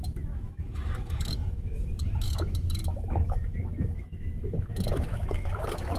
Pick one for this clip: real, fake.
fake